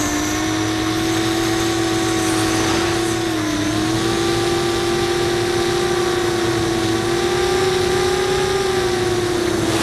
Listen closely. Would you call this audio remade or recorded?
recorded